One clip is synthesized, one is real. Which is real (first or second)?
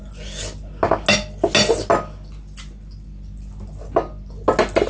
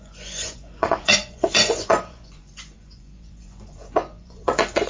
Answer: first